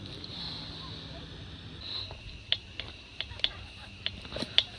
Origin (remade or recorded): recorded